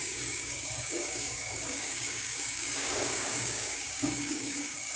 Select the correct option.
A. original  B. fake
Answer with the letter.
B